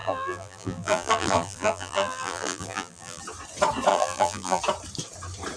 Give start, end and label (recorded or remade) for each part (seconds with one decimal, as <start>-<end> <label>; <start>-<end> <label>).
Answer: 0.0-3.2 remade; 3.2-3.9 recorded; 3.9-4.6 remade; 4.6-5.6 recorded